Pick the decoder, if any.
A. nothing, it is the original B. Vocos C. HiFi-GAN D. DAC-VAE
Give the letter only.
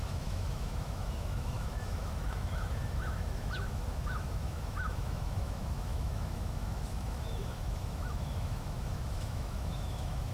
D